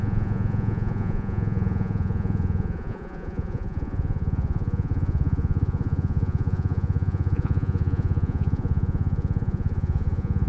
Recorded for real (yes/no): no